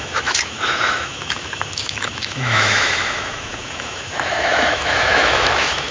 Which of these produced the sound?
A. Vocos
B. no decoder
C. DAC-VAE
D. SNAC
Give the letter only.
C